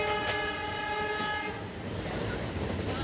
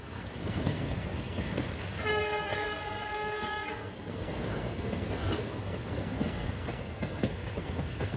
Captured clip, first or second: first